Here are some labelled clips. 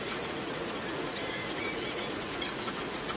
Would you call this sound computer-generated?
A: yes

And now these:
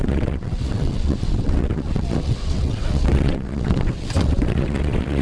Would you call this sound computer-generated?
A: yes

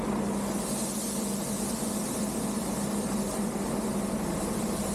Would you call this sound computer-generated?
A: no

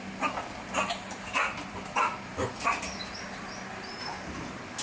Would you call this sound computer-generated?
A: no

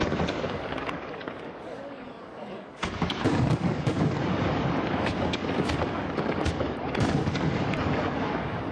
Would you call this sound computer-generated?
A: yes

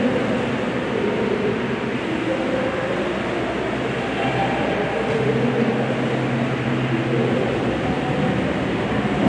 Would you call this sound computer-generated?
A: no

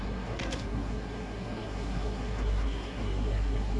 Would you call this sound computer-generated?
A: yes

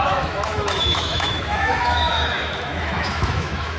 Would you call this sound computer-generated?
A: yes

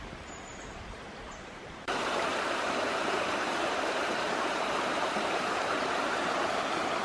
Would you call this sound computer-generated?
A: yes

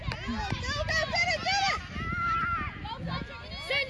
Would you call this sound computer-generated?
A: no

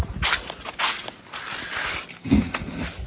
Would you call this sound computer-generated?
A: no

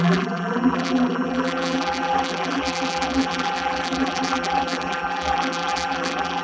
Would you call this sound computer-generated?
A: yes